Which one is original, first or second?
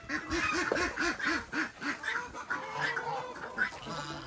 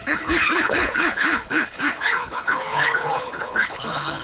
first